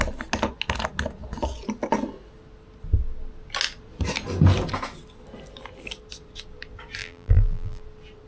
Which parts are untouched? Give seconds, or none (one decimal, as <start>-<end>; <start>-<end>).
0.0-7.0; 7.8-8.3